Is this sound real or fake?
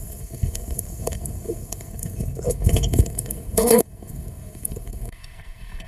fake